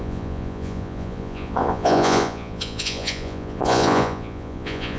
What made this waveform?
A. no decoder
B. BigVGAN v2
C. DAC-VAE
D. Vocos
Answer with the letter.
D